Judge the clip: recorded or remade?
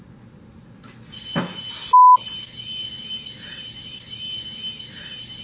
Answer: recorded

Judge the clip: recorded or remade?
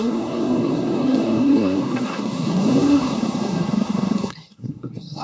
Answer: remade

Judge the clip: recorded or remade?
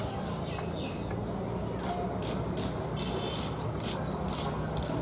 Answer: recorded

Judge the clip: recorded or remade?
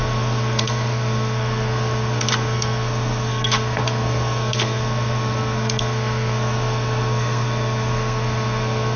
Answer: remade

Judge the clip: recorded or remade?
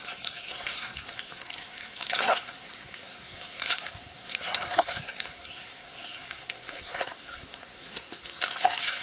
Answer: remade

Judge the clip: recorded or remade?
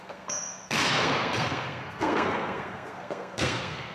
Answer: remade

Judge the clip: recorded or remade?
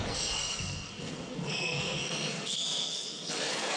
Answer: remade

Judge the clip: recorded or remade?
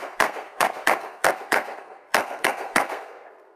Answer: remade